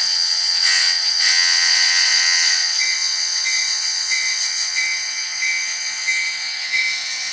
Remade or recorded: remade